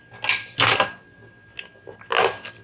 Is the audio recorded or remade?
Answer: recorded